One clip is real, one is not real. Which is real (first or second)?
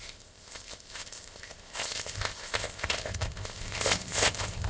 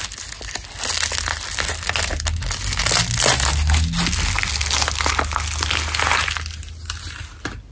second